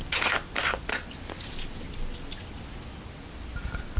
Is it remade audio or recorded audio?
recorded